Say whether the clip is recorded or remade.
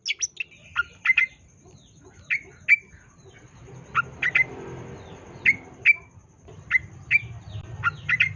recorded